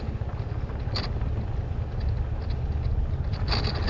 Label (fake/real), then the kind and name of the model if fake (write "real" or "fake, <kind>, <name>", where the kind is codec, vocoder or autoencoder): real